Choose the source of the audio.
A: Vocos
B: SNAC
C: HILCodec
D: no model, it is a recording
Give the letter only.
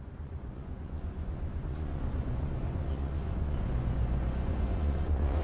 A